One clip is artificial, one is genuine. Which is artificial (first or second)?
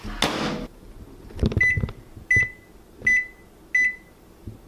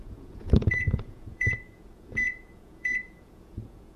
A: second